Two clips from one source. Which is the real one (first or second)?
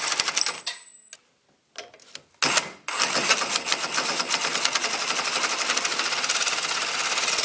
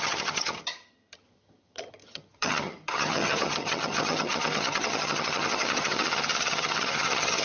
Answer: first